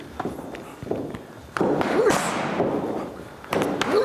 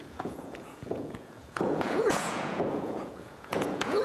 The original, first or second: first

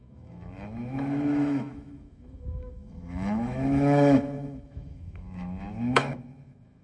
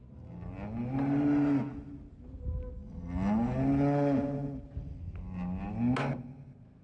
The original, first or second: second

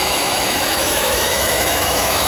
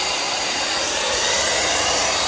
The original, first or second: second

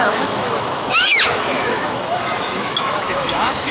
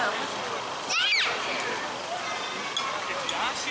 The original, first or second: second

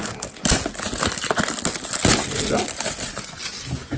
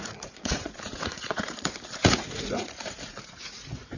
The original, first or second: first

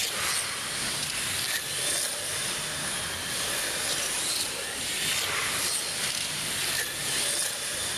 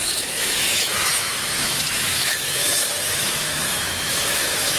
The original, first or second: first